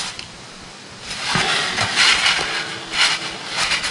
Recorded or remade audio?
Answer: recorded